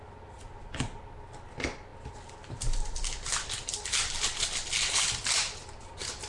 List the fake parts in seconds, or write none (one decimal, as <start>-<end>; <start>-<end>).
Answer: none